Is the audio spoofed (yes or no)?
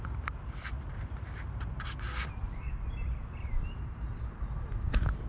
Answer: no